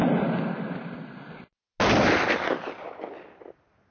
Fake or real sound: real